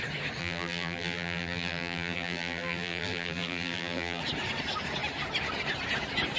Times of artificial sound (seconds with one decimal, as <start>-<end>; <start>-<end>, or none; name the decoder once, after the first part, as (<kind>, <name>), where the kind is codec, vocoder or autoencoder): 0.4-4.2 (vocoder, BigVGAN v2)